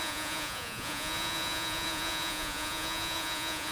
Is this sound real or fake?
fake